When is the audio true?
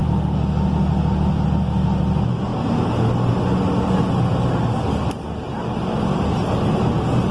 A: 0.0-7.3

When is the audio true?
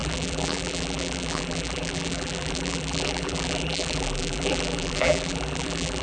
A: none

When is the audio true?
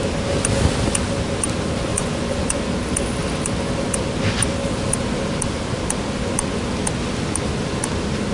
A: 0.0-1.9; 2.6-8.3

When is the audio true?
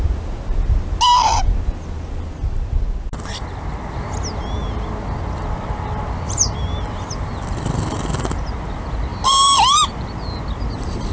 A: 0.0-11.1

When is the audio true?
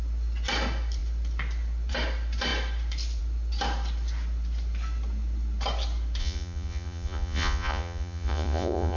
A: 0.0-6.2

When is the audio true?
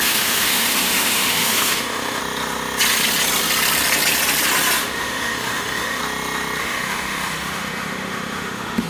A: 2.2-4.8; 6.0-6.6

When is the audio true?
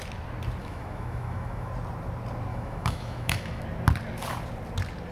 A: 0.0-0.6; 1.7-2.5; 3.6-5.1